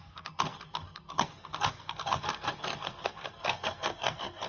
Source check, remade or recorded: remade